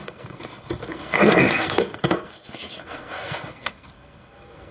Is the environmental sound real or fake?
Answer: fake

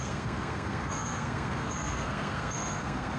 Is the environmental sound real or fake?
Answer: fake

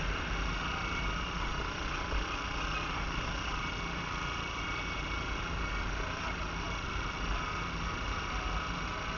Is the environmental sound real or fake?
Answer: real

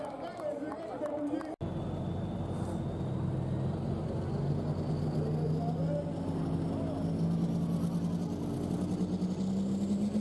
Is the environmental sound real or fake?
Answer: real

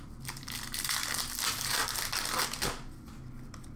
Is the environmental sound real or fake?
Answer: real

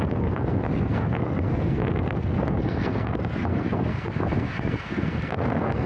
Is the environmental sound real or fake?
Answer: fake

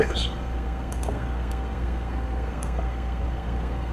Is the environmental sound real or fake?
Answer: fake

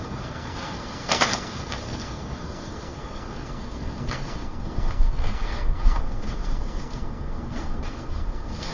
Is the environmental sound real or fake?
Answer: fake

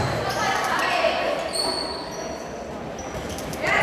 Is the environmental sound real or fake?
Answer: real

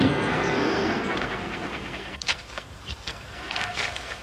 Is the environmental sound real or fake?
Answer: fake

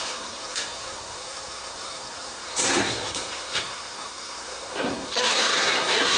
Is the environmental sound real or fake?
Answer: fake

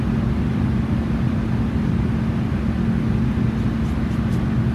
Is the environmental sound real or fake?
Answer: real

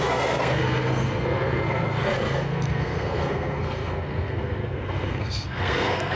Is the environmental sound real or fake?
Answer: fake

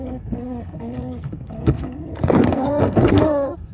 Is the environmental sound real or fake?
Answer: fake